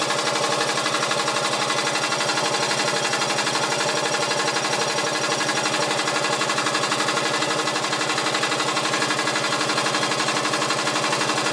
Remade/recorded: recorded